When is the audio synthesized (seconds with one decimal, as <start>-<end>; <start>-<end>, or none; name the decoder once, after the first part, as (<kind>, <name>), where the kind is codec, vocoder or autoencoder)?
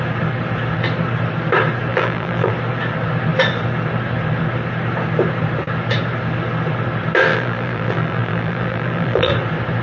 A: 1.9-2.5 (vocoder, BigVGAN v2); 7.3-9.3